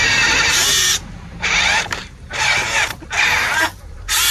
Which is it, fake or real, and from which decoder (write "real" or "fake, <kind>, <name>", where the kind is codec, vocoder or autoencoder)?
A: fake, vocoder, BigVGAN v2